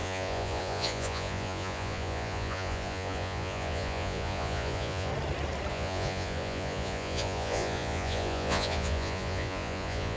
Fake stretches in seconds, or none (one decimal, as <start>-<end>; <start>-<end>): 0.0-5.1; 5.7-10.2